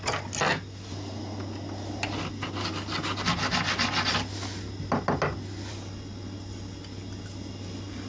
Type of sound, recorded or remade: recorded